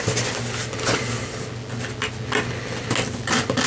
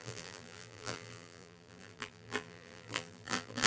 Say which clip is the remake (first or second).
second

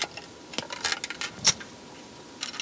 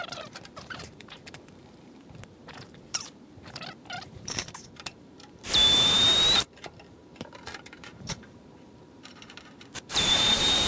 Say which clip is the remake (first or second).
second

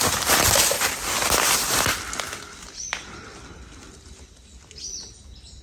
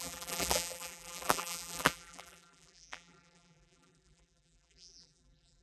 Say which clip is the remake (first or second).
second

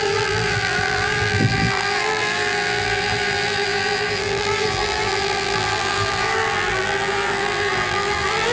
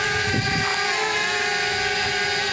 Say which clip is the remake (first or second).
first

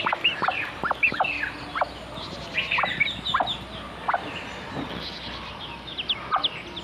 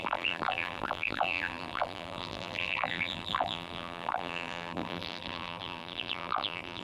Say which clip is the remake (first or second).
second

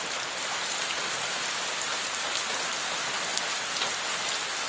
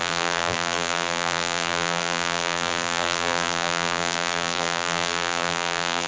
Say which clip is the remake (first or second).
second